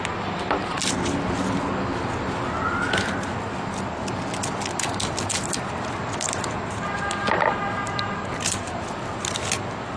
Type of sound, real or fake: real